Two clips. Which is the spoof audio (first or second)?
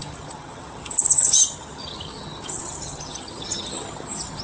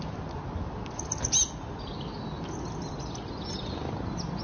first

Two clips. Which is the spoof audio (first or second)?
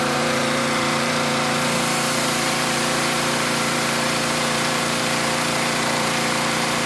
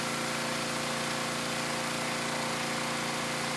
first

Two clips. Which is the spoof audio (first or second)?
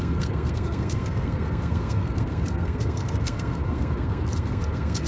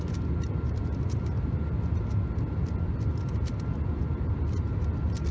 first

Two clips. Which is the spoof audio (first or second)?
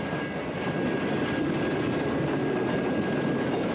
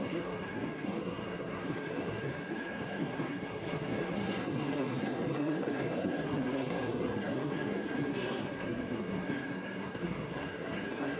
second